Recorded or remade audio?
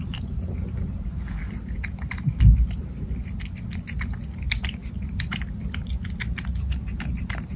recorded